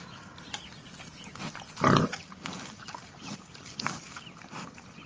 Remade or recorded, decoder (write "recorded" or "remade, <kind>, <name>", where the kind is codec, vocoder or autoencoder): recorded